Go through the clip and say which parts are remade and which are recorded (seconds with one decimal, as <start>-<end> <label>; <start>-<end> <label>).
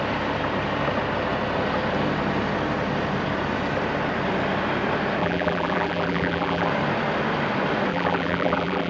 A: 0.0-5.2 recorded; 5.2-6.7 remade; 6.7-7.9 recorded; 7.9-8.9 remade